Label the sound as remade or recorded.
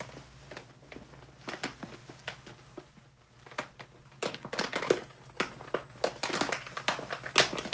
recorded